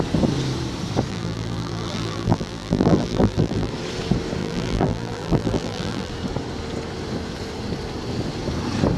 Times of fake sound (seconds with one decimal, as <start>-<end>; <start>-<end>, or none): 1.1-3.7; 4.4-6.1